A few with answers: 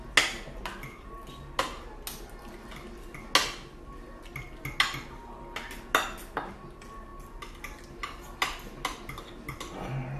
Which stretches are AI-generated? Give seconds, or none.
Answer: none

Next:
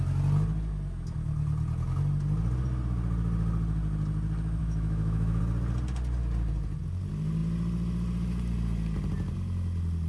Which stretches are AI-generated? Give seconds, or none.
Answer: 4.6-5.4 (autoencoder, DAC-VAE)

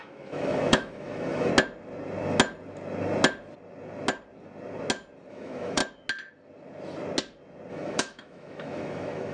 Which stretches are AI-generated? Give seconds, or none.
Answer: 0.0-1.5 (autoencoder, DAC-VAE); 5.3-5.8; 7.7-9.3

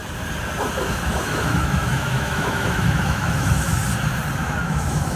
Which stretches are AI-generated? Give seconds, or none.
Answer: 0.9-3.8 (autoencoder, DAC-VAE); 4.4-5.2